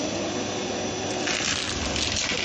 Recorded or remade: recorded